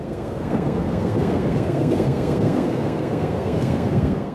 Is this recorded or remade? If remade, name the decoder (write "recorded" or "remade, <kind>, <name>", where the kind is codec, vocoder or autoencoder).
remade, codec, SNAC